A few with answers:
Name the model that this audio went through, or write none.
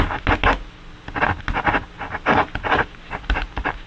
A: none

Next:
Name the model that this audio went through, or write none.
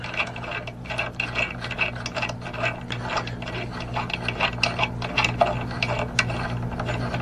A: none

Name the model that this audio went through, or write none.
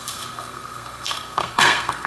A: codec, SNAC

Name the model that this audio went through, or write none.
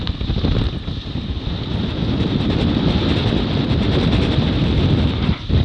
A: none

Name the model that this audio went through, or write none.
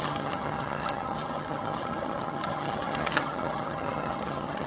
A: vocoder, HiFi-GAN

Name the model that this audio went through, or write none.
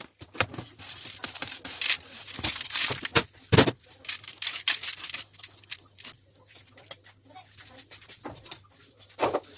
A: vocoder, BigVGAN v2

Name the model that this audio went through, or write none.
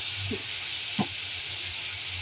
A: none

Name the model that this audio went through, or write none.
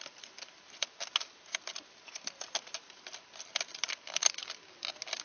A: none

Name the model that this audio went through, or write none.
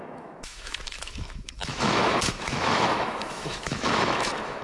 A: autoencoder, DAC-VAE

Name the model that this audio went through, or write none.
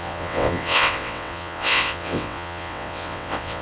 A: vocoder, WaveNeXt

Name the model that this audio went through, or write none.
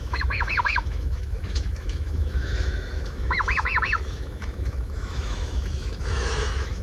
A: autoencoder, DAC-VAE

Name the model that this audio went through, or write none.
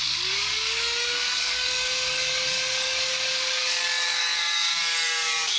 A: codec, DAC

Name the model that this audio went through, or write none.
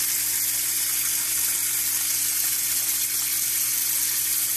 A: none